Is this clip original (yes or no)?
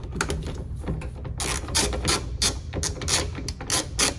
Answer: yes